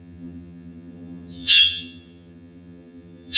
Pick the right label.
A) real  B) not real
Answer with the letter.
B